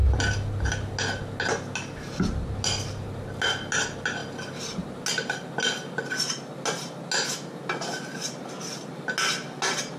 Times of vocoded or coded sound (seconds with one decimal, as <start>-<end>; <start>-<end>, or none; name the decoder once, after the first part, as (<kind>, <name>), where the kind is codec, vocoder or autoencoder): none